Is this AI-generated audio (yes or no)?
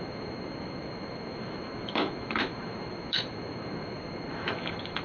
yes